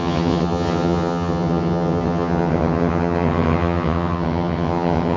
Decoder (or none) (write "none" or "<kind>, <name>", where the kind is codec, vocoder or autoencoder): vocoder, HiFi-GAN